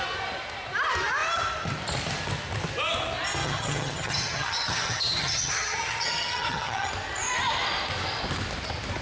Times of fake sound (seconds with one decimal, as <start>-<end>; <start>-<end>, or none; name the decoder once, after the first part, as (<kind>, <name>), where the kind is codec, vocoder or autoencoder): 3.4-6.9 (vocoder, HiFi-GAN)